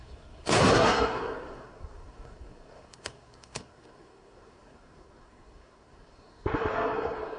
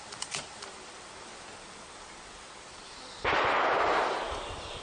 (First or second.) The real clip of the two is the second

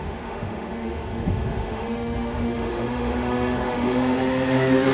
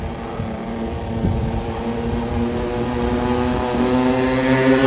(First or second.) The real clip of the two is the second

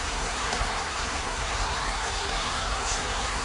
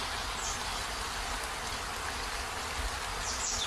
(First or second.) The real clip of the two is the second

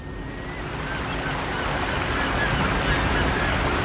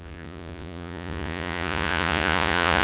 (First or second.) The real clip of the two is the first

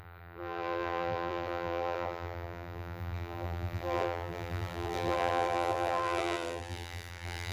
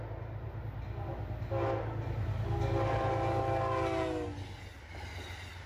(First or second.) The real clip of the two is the second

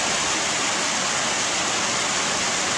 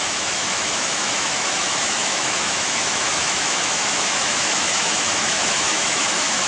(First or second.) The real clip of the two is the first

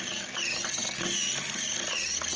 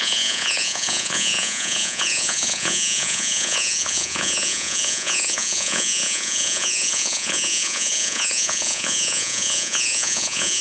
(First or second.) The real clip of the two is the first